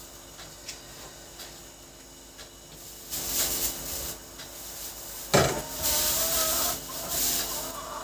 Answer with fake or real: real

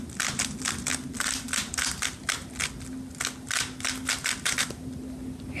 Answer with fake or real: real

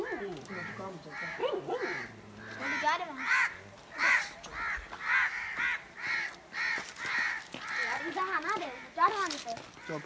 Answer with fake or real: real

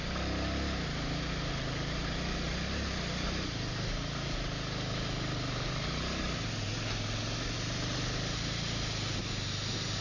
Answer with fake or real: real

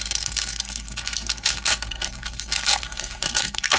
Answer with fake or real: fake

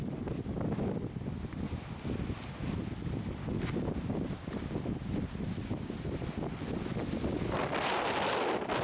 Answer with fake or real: real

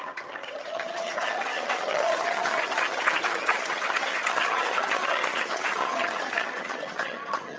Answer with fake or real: fake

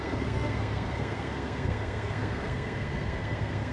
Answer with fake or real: fake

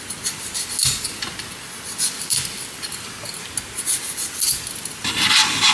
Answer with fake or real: real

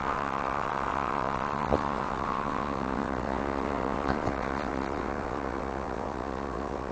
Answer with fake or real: fake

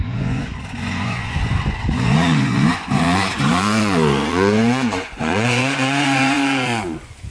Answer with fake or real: fake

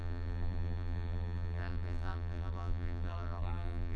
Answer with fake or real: fake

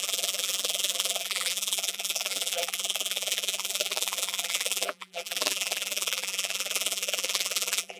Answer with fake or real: fake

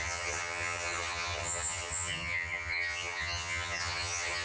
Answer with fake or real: fake